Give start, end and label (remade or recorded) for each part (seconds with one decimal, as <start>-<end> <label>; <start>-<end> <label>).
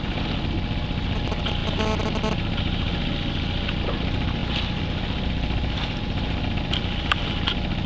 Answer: 0.0-7.9 recorded